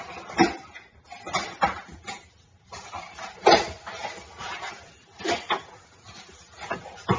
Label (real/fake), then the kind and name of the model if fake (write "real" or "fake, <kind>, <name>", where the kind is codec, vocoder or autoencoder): real